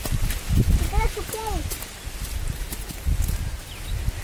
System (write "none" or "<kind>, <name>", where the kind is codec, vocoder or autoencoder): none